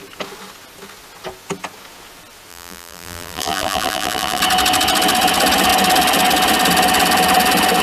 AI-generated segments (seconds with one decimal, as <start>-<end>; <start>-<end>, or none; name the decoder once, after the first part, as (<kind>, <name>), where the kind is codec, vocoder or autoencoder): 2.5-4.4 (vocoder, BigVGAN v2)